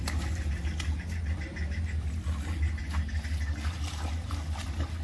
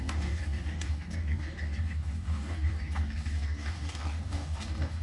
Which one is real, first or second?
first